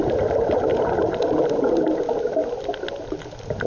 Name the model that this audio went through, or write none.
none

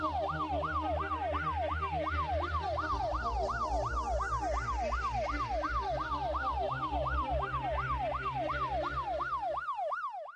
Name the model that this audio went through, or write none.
none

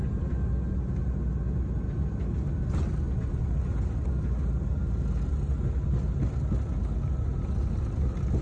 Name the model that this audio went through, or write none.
none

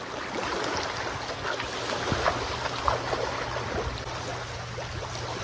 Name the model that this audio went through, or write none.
none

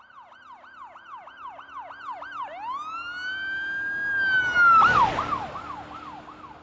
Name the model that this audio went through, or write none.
none